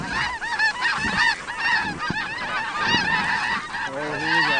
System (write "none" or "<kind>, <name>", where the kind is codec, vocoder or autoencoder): none